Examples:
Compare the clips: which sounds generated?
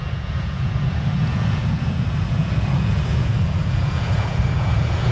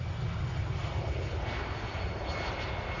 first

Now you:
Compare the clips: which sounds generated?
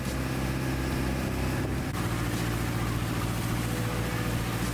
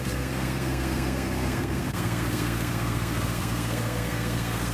second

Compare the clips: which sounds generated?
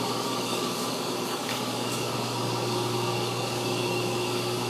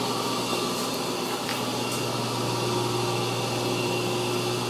first